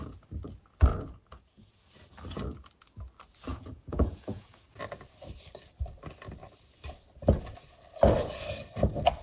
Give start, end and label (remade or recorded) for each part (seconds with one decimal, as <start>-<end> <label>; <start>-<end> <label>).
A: 0.0-0.9 recorded; 0.9-1.9 remade; 1.9-3.5 recorded; 3.5-4.8 remade; 4.8-9.2 recorded